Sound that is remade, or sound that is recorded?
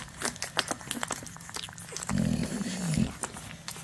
recorded